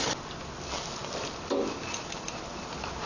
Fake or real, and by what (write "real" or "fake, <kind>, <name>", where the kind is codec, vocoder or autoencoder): real